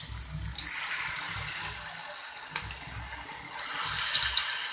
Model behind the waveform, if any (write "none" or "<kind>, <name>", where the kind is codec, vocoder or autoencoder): none